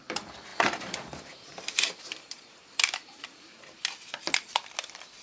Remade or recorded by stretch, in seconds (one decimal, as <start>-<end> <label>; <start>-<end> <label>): 0.0-0.5 recorded; 0.5-3.6 remade; 3.6-5.2 recorded